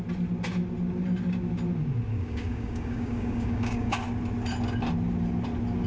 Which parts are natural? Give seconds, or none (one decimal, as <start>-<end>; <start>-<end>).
0.0-2.1; 3.9-5.9